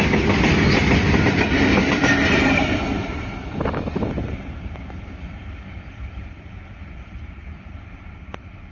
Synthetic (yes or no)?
no